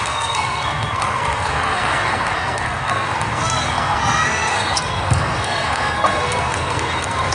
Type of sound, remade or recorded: remade